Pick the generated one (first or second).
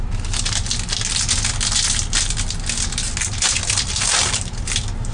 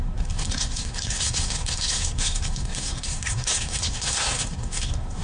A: second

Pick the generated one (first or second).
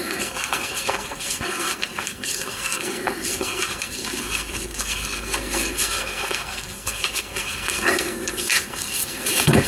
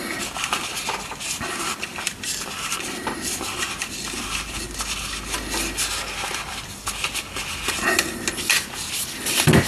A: first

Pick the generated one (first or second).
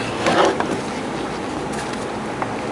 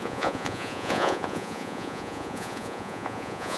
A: second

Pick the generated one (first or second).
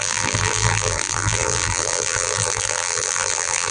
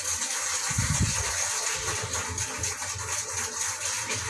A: first